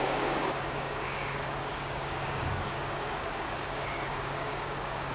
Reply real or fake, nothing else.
fake